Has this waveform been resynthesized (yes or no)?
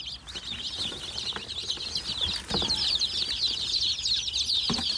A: no